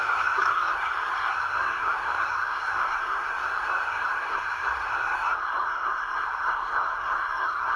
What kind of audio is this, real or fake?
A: fake